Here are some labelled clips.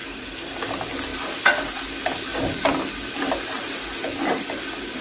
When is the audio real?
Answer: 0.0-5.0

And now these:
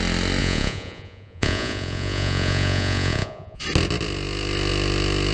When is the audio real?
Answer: 0.0-0.4; 3.6-5.3